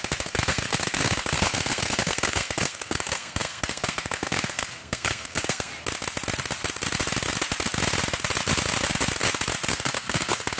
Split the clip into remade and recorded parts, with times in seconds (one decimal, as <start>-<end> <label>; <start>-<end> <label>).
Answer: 0.0-5.7 remade; 5.7-9.7 recorded; 9.7-10.6 remade